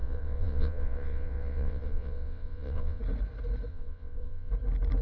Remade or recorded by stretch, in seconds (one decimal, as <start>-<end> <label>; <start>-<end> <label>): 0.0-3.0 remade; 3.0-3.7 recorded; 3.7-4.5 remade; 4.5-5.0 recorded